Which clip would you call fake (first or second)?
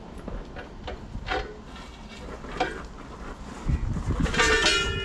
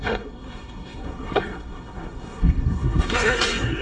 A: second